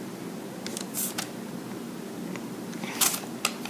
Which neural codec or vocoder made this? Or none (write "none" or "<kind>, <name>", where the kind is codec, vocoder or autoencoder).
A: none